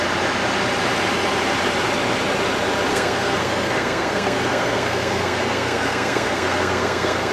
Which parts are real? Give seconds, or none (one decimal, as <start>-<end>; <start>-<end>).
0.0-2.9